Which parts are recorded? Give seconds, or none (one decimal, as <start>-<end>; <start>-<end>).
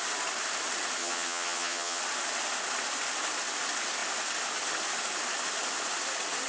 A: 0.0-1.0; 2.0-6.5